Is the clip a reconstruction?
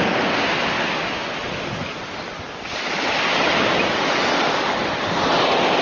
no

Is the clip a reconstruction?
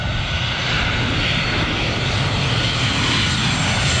no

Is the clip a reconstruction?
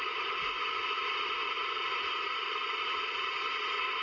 no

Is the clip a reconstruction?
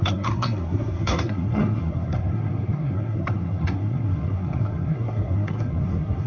yes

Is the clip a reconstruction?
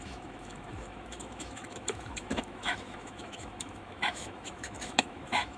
yes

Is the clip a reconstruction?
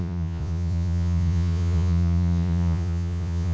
yes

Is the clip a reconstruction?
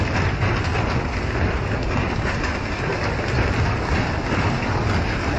no